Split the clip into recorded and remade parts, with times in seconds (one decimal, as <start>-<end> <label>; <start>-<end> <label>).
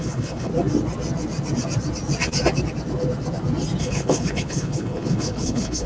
0.0-0.5 remade; 0.5-3.8 recorded; 3.8-5.9 remade